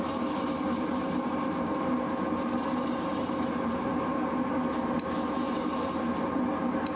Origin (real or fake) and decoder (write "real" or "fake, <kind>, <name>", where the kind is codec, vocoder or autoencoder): fake, vocoder, BigVGAN v2